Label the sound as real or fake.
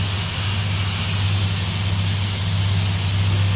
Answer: real